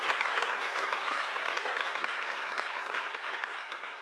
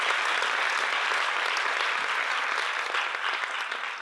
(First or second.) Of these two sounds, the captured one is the second